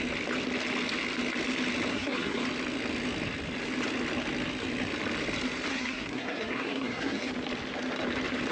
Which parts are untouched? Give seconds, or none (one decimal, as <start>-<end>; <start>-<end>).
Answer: 0.0-1.9; 2.4-5.7; 7.3-8.5